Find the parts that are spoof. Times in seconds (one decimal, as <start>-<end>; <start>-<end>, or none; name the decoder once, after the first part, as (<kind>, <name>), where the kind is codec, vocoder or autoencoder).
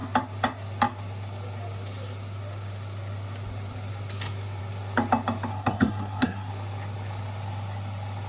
5.5-6.5 (codec, SNAC)